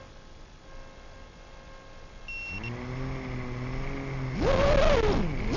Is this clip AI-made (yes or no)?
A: no